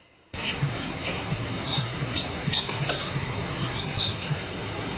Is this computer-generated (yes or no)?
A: yes